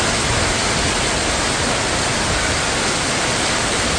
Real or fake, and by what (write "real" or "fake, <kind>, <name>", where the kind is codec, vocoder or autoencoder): real